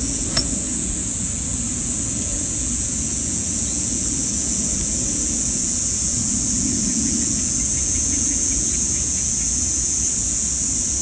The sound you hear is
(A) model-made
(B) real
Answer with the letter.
A